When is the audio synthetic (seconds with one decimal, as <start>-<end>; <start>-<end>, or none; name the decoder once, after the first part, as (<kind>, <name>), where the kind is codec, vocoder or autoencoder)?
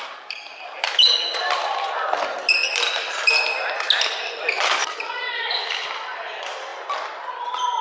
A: none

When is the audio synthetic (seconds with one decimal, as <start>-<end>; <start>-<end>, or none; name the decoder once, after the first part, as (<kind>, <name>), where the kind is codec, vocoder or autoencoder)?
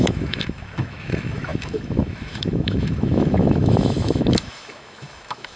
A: 0.0-5.6 (autoencoder, DAC-VAE)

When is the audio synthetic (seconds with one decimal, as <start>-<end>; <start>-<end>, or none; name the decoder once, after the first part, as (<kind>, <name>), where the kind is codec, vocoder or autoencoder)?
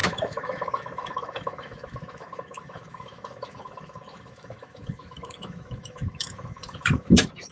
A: 0.0-7.5 (autoencoder, DAC-VAE)